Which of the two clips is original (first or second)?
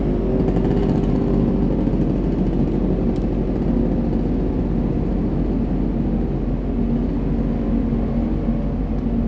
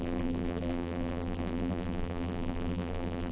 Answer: first